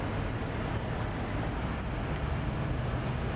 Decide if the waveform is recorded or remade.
recorded